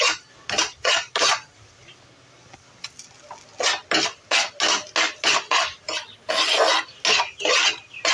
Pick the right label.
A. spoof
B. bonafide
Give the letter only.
B